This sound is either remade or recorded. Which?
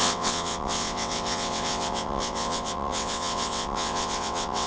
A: remade